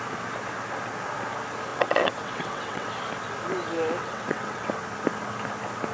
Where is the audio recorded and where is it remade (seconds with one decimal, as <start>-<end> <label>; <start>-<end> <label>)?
0.0-1.7 recorded; 1.7-2.9 remade; 2.9-4.0 recorded; 4.0-4.7 remade; 4.7-5.9 recorded